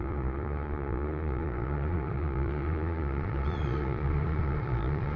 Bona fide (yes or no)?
no